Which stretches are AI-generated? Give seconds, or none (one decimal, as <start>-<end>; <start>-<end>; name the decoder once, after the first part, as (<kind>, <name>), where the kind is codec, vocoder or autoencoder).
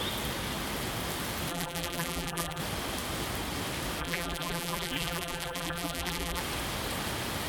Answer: 1.5-2.6 (vocoder, BigVGAN v2); 4.0-6.4